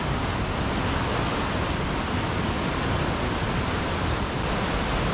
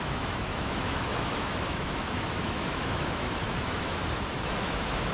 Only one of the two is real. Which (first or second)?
first